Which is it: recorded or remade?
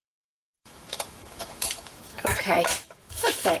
remade